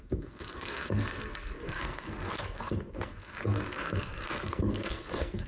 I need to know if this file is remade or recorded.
remade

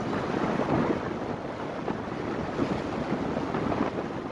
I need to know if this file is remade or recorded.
recorded